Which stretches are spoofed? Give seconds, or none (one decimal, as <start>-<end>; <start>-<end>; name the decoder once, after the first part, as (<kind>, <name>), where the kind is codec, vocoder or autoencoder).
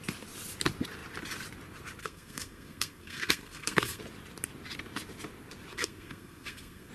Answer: 2.0-4.0 (codec, SNAC); 5.7-6.9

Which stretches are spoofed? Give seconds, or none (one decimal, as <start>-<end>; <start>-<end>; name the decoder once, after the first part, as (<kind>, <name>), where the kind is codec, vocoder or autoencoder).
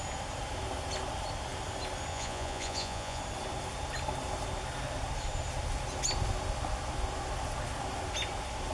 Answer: 2.1-3.2 (vocoder, Vocos)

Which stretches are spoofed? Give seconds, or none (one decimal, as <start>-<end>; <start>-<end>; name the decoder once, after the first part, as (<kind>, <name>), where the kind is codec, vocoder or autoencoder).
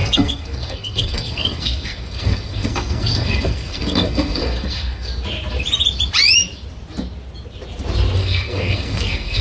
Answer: 0.0-5.1 (codec, SNAC); 8.2-9.4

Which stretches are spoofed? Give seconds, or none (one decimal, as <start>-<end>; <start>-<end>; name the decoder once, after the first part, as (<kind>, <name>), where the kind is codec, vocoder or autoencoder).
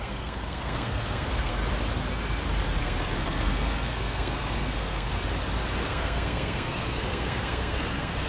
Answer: 0.0-1.6 (codec, SNAC); 2.8-5.1; 5.9-8.3